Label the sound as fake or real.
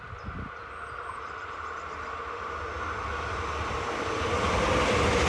real